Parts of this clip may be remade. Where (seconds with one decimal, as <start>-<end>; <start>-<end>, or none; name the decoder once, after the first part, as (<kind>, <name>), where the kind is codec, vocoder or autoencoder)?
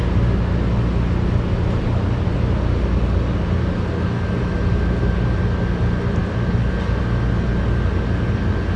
none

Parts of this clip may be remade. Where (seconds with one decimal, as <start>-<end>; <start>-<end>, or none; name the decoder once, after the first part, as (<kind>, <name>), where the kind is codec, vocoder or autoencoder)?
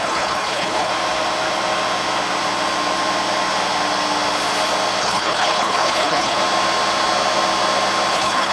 0.0-0.9 (codec, HILCodec); 5.0-6.4; 8.1-8.5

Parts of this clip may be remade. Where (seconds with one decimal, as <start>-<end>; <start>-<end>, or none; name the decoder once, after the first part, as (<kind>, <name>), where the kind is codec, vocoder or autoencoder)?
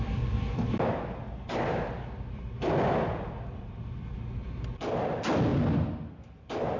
none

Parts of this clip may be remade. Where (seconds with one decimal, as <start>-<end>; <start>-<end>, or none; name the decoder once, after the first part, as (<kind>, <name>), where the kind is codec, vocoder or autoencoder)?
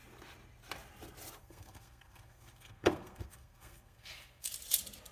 1.4-4.5 (codec, SNAC)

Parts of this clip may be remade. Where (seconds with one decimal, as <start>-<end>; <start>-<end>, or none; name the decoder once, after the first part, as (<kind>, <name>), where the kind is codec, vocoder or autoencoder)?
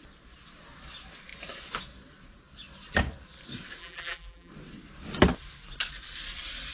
3.8-4.5 (vocoder, BigVGAN v2)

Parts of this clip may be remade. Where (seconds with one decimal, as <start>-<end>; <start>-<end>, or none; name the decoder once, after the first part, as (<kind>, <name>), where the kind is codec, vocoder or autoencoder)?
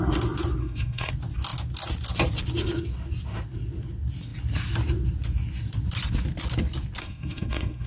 0.6-1.1 (codec, SNAC); 7.0-7.9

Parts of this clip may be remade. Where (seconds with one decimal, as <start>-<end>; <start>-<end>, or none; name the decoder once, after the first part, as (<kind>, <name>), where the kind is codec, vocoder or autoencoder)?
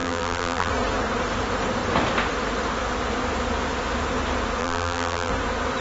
0.0-0.7 (vocoder, BigVGAN v2); 4.6-5.3